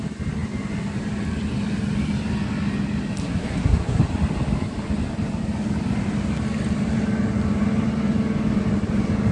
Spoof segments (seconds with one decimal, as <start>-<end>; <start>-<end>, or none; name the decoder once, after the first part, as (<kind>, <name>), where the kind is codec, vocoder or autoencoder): 3.2-4.0 (codec, SNAC)